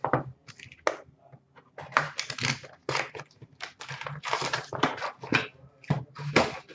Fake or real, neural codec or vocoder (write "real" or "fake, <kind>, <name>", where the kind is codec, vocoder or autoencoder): real